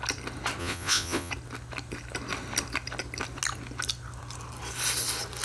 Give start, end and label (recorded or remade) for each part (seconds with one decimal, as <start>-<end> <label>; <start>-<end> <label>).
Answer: 0.0-0.6 recorded; 0.6-1.3 remade; 1.3-5.4 recorded